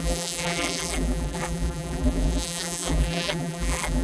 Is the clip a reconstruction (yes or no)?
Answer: yes